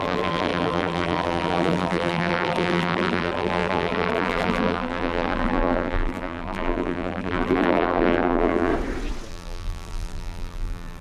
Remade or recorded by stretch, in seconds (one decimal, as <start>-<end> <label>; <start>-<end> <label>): 0.0-8.7 remade; 8.7-9.3 recorded; 9.3-11.0 remade